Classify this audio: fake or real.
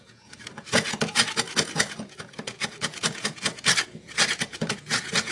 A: fake